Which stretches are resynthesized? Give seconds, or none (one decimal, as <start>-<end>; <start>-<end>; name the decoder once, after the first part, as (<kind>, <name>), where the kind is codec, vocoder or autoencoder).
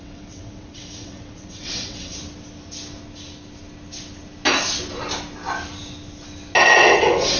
0.0-2.2 (vocoder, WaveNeXt); 6.6-7.4